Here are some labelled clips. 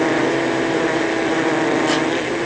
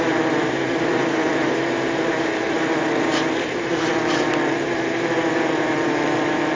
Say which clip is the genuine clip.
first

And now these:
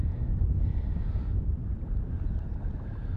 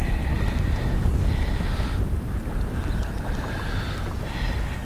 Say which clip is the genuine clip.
second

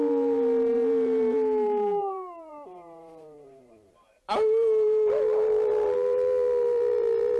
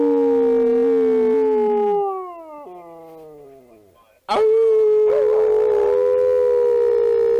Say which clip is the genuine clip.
second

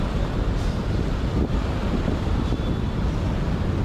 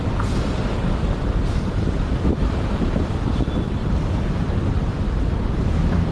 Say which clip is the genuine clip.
first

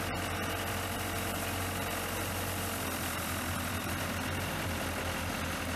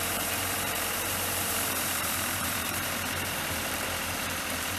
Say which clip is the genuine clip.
first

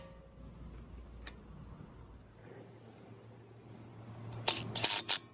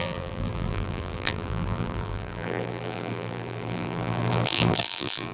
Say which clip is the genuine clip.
first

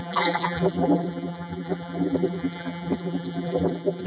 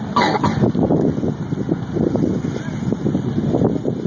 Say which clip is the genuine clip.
second